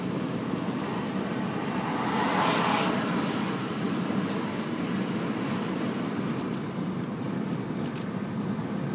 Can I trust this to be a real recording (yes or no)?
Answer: yes